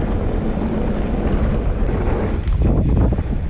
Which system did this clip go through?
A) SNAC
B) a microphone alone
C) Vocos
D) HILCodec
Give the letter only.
B